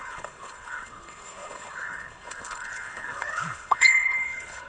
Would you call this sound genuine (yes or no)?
no